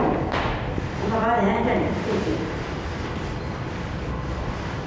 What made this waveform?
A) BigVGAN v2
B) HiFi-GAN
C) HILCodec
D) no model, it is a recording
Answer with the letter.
A